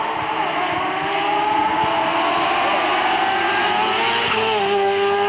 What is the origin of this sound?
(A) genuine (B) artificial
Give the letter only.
A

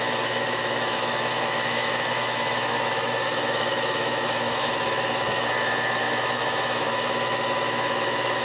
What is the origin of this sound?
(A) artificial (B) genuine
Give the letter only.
A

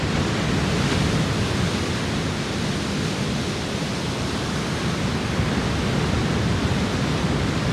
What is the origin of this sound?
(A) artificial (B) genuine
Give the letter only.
A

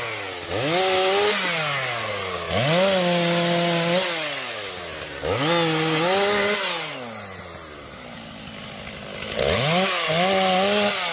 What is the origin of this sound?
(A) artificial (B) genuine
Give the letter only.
B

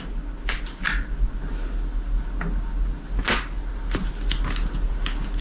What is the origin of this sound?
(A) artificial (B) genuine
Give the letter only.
B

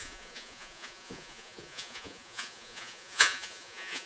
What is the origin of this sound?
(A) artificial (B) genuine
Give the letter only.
A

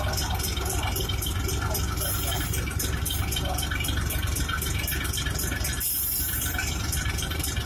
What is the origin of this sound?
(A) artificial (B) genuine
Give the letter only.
A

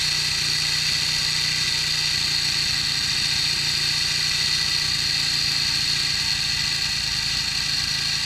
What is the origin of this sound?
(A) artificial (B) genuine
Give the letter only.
B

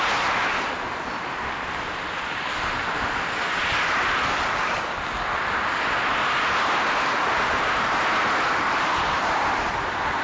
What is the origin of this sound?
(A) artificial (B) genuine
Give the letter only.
B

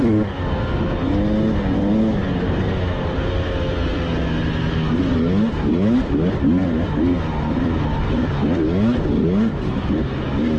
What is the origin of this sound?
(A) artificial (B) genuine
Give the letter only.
B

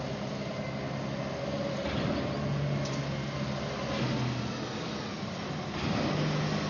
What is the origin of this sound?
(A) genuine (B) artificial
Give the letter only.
A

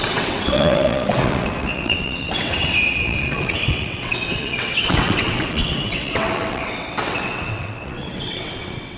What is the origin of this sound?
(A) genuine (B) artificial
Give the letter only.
B